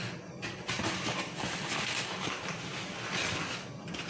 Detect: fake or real real